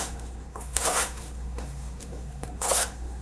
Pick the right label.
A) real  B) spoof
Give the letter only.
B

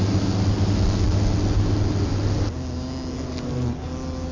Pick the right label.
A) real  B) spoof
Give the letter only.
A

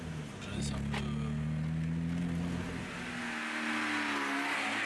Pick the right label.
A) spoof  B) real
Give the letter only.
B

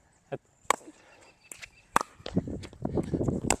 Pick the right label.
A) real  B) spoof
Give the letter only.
A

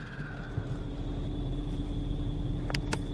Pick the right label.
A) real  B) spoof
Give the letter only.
A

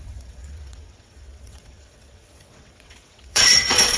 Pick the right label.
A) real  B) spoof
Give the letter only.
B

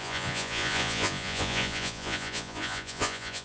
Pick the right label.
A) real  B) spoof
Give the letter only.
B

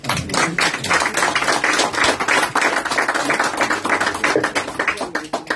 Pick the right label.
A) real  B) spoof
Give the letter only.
A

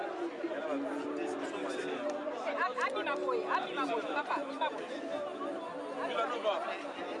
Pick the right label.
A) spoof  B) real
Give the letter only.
B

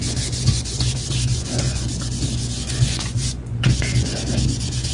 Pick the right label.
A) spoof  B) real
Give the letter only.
A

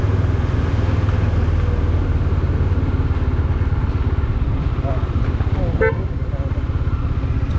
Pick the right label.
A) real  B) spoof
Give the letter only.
A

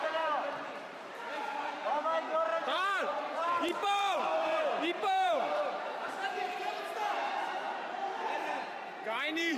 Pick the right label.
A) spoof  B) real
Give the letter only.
A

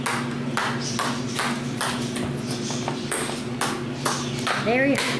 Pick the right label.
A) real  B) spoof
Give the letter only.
A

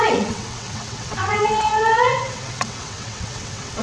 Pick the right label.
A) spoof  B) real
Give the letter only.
A